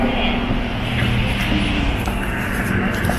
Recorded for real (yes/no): yes